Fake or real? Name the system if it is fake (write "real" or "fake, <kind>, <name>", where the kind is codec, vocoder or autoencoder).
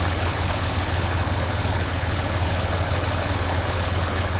fake, codec, HILCodec